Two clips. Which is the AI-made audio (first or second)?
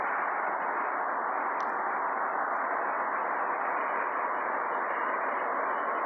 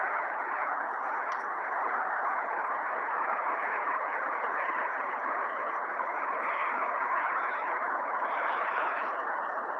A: second